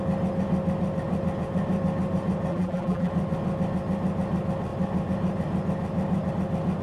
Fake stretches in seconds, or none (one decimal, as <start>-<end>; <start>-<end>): 2.5-3.1